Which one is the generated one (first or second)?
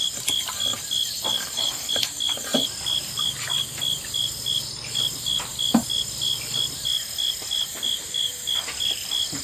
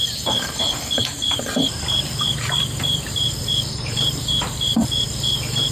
second